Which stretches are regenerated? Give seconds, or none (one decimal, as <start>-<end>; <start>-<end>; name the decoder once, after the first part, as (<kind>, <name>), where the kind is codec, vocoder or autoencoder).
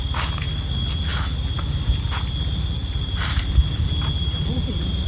2.8-3.3 (vocoder, BigVGAN v2)